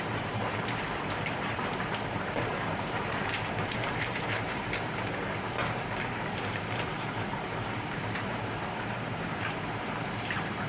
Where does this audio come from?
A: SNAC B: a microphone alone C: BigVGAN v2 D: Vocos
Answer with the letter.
C